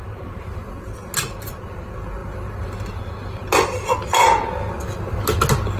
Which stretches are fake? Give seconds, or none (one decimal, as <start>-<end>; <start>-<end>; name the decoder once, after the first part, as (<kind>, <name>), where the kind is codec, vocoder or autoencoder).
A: none